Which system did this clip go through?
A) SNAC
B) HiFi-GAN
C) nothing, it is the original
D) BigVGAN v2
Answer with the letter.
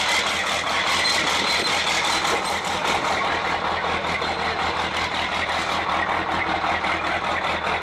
C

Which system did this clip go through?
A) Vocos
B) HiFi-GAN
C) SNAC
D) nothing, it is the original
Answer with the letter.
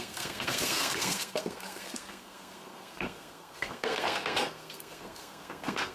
C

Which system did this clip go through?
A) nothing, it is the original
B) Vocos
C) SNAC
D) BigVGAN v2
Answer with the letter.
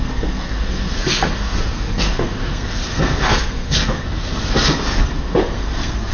C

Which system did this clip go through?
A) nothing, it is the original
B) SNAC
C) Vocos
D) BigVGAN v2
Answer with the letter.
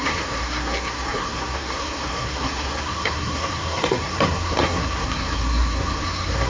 B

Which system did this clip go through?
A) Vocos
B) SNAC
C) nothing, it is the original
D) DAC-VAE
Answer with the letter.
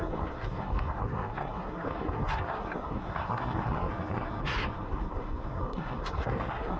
B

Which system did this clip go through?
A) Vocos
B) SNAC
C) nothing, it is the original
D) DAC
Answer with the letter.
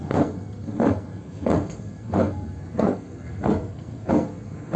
B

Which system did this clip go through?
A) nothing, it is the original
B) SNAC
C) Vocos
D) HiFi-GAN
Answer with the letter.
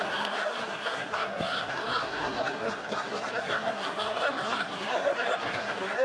B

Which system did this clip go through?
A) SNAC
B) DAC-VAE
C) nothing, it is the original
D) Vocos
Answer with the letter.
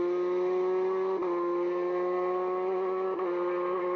C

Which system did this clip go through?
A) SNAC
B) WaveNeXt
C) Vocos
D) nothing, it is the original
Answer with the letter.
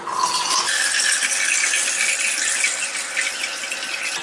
D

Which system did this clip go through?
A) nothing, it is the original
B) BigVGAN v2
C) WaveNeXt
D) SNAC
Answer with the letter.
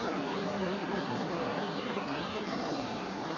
D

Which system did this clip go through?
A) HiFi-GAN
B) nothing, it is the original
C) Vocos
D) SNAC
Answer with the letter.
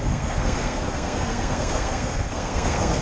D